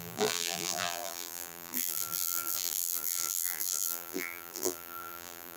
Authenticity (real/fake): fake